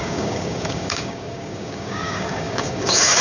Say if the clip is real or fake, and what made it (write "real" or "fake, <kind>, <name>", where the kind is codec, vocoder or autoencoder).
fake, codec, DAC